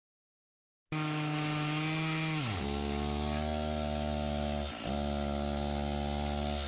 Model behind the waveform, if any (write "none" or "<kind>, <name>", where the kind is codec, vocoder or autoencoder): none